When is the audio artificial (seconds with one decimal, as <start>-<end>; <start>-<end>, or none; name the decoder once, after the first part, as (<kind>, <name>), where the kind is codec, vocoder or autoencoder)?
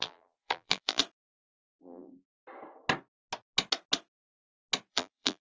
0.0-1.0 (vocoder, BigVGAN v2); 1.7-2.1; 4.9-5.4